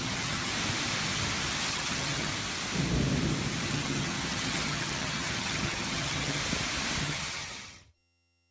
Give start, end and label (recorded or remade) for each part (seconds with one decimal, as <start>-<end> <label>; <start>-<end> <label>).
0.0-0.5 remade; 0.5-1.7 recorded; 1.7-2.3 remade; 2.3-3.6 recorded; 3.6-6.4 remade; 6.4-7.0 recorded; 7.0-8.5 remade